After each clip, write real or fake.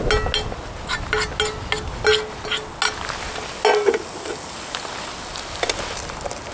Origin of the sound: real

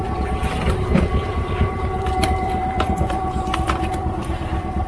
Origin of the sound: fake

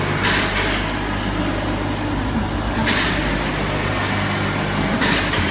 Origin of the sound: real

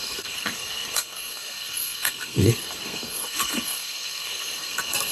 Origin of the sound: fake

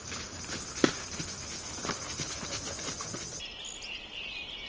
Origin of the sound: real